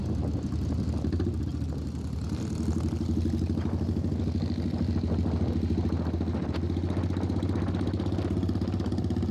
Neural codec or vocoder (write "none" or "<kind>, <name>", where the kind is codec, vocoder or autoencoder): none